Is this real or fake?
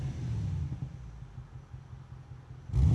real